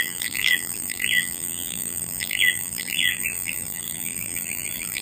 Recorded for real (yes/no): no